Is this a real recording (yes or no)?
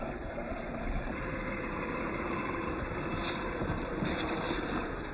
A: no